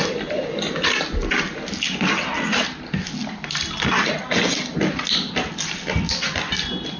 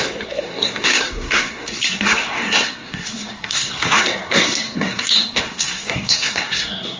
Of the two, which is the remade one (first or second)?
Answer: second